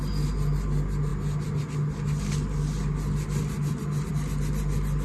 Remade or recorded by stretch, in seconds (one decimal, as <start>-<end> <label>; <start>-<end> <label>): 0.0-5.0 recorded